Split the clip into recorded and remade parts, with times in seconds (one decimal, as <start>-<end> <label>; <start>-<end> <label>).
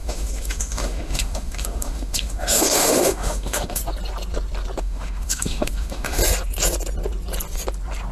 0.0-3.8 remade; 3.8-4.8 recorded; 4.8-6.2 remade; 6.2-8.1 recorded